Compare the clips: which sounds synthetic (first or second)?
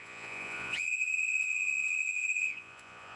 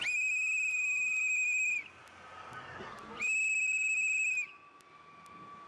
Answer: first